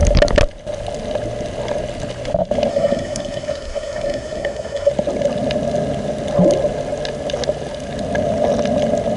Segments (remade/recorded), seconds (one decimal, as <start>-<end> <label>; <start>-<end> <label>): 0.0-2.7 recorded; 2.7-4.9 remade; 4.9-9.2 recorded